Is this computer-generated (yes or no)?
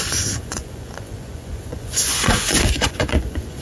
yes